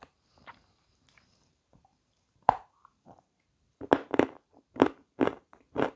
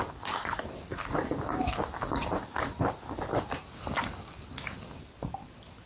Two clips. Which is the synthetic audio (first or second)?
first